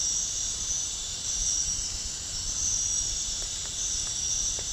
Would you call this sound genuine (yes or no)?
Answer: no